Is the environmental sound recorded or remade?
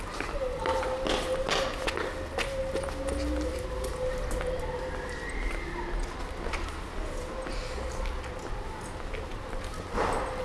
recorded